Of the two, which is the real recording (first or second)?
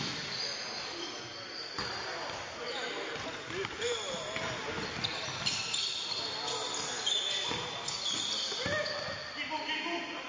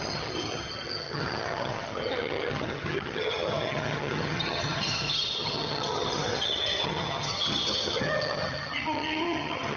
first